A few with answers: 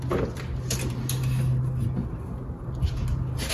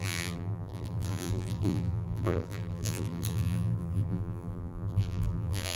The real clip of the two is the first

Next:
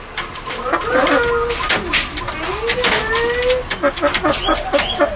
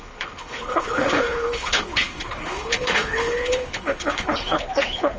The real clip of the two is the first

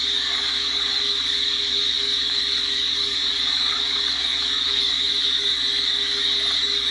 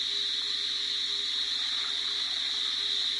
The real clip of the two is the second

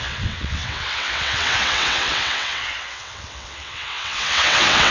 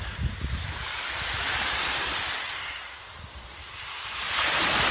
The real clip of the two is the second